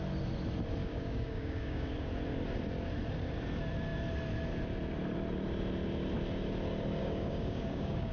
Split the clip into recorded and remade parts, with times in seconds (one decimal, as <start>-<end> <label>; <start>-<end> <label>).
0.0-0.8 recorded; 0.8-2.1 remade; 2.1-7.0 recorded; 7.0-8.1 remade